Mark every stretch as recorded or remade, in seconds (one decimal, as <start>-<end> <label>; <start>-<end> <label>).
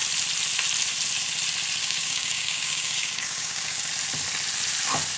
0.0-1.8 recorded; 1.8-3.9 remade; 3.9-5.2 recorded